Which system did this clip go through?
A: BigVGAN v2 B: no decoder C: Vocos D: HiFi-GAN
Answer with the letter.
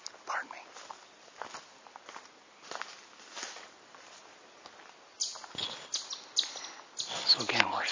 B